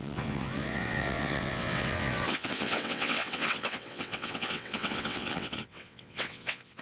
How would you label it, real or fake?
fake